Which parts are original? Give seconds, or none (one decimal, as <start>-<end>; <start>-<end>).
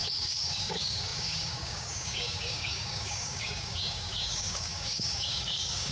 none